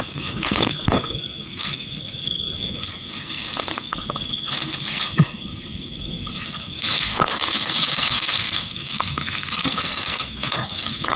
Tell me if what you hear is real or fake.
fake